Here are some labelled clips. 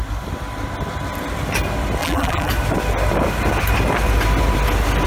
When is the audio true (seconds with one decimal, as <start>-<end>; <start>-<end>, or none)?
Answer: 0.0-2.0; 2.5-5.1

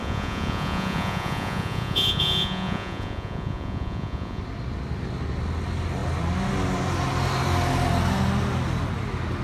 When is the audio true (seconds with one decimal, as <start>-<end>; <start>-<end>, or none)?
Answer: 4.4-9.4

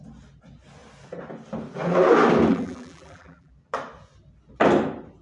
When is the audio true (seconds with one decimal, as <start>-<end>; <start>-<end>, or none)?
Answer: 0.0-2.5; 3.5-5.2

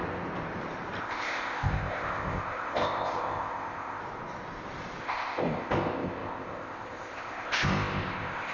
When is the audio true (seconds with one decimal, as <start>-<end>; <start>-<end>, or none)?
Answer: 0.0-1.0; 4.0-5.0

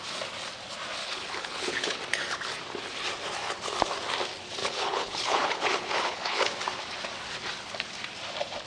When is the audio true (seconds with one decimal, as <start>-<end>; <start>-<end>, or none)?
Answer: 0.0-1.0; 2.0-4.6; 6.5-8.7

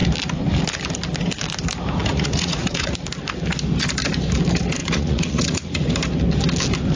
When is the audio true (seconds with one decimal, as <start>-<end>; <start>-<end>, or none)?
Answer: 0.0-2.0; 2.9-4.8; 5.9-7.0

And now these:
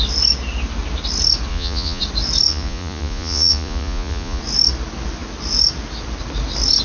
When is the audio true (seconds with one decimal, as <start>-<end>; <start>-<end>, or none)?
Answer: 0.0-1.5; 2.0-2.5; 4.4-6.8